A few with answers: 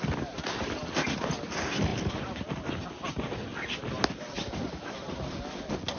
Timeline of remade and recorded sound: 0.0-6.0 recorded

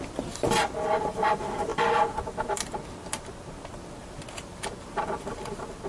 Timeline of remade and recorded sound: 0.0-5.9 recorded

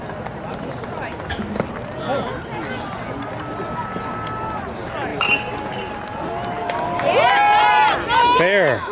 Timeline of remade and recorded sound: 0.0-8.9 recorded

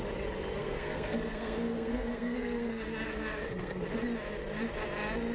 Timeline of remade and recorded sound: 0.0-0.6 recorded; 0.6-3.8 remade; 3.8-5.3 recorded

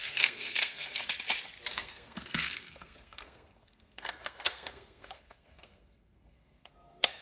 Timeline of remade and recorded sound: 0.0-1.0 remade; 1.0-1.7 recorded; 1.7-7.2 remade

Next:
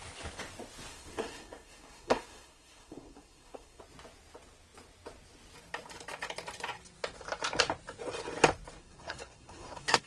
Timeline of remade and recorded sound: 0.0-0.9 recorded; 0.9-3.8 remade; 3.8-8.8 recorded; 8.8-10.1 remade